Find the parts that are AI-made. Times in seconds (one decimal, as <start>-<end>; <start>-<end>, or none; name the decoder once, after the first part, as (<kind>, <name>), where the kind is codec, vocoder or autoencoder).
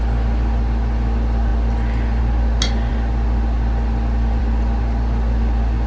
none